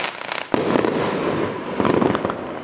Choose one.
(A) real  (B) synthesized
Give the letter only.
A